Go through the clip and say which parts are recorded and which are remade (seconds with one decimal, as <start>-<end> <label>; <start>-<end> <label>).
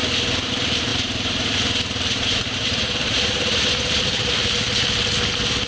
0.0-0.9 recorded; 0.9-4.3 remade; 4.3-5.7 recorded